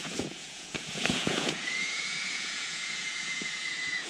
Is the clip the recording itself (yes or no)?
no